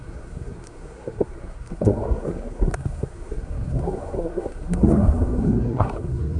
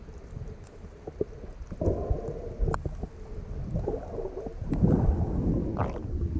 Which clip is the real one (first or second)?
second